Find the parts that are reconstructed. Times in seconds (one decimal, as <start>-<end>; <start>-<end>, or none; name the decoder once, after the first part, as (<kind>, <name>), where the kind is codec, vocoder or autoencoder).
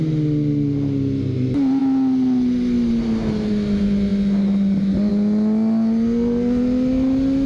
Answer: none